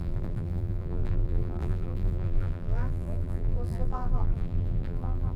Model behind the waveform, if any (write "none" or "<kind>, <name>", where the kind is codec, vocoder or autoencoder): vocoder, BigVGAN v2